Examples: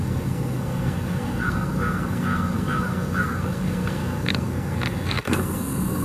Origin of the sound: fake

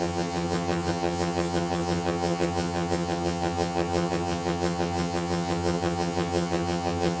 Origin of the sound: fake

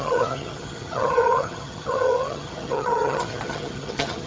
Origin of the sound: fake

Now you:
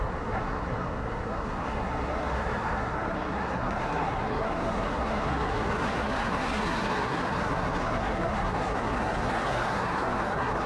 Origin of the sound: fake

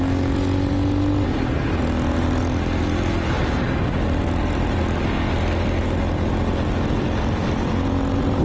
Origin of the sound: real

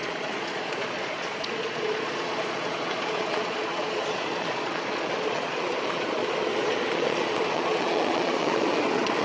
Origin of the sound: fake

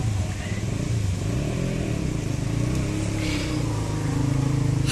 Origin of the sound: real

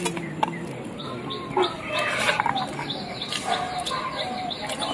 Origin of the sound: real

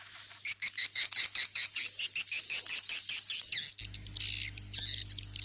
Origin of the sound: real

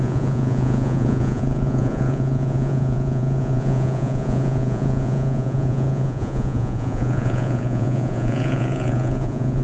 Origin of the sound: fake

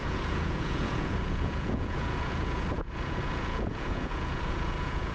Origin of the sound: fake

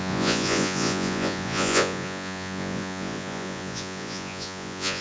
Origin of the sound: fake